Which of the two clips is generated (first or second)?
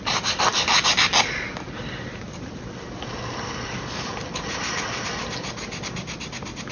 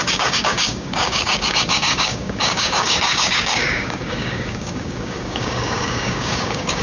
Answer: second